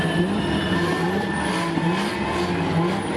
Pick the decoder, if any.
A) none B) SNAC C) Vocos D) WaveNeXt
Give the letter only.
A